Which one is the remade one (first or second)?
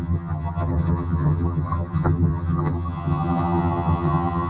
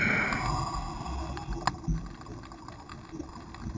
first